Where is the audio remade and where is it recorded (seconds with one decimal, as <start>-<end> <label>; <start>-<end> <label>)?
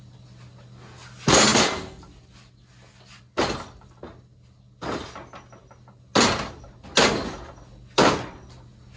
0.0-9.0 recorded